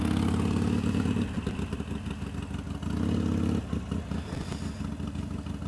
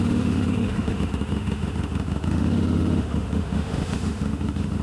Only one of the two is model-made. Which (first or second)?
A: second